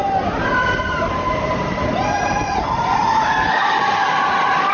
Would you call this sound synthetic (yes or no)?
no